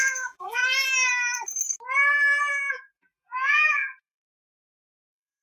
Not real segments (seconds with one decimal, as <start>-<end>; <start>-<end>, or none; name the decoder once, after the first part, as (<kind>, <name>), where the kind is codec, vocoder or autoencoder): 0.0-0.6 (vocoder, BigVGAN v2); 2.7-5.4